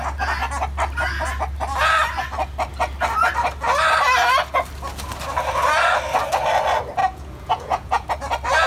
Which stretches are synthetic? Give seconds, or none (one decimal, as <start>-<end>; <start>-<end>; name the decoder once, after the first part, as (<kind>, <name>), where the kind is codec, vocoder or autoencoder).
7.0-8.1 (vocoder, Vocos)